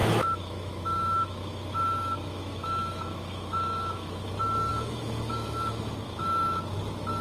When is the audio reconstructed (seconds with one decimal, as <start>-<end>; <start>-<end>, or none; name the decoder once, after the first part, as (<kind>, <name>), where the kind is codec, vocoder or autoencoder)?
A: 0.0-4.3 (autoencoder, DAC-VAE); 4.7-6.6